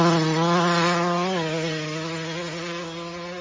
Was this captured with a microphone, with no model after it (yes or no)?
yes